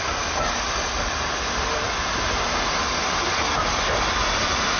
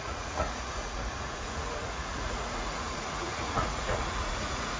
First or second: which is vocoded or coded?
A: second